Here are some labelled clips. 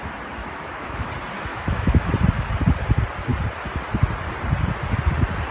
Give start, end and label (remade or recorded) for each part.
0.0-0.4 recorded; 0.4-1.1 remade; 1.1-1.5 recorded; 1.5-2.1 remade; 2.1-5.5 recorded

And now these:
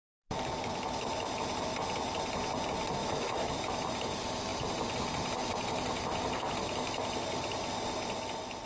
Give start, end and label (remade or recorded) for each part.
0.0-3.0 recorded; 3.0-3.6 remade; 3.6-8.7 recorded

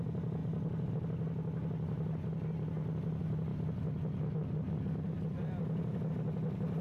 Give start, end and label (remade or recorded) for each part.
0.0-6.8 recorded